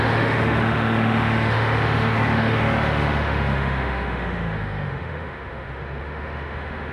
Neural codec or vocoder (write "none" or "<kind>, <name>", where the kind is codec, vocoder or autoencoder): autoencoder, DAC-VAE